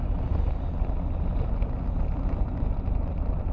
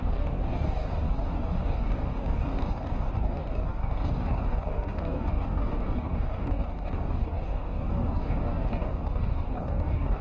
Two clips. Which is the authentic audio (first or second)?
first